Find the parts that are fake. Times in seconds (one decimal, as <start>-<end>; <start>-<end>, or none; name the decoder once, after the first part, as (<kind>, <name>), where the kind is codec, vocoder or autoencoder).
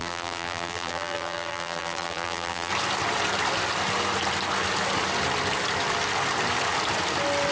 0.0-2.7 (vocoder, BigVGAN v2)